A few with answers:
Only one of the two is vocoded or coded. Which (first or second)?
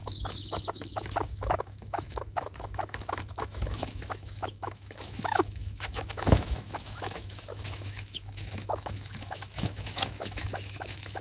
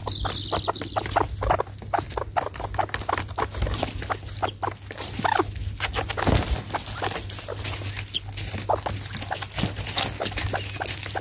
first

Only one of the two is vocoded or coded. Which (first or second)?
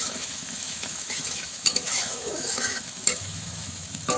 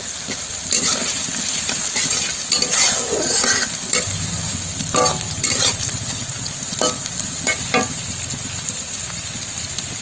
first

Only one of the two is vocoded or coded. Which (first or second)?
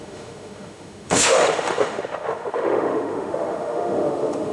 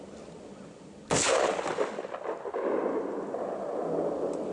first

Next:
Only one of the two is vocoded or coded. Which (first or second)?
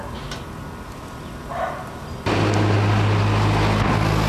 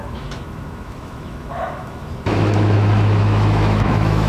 second